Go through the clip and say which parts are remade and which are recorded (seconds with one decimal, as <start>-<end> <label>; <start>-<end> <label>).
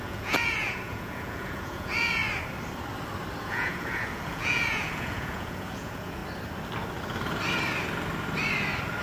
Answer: 0.0-2.2 remade; 2.2-3.4 recorded; 3.4-6.2 remade; 6.2-9.0 recorded